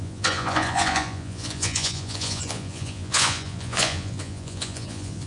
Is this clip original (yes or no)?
no